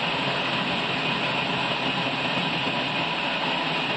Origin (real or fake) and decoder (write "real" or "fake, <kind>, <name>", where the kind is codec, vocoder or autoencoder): real